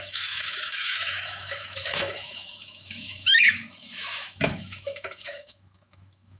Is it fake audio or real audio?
fake